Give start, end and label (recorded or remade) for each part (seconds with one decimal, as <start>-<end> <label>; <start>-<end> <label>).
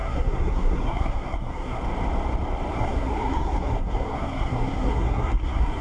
0.0-1.8 remade; 1.8-2.7 recorded; 2.7-5.8 remade